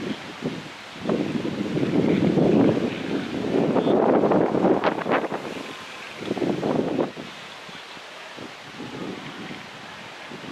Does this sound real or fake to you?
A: real